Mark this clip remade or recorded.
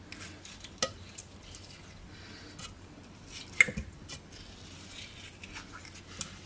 recorded